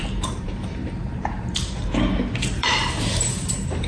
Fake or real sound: fake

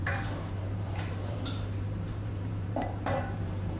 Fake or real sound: fake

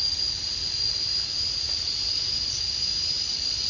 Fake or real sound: real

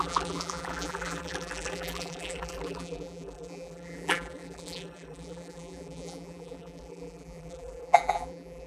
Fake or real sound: fake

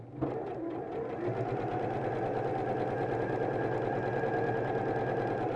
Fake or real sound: real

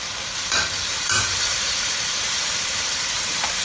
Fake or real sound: fake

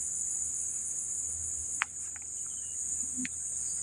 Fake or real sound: real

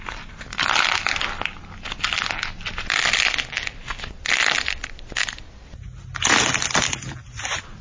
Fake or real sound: real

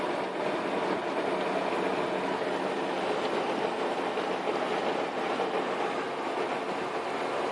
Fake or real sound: real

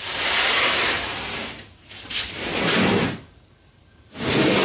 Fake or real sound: fake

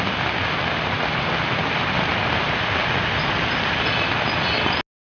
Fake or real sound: real